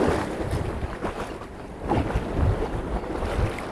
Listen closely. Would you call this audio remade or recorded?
recorded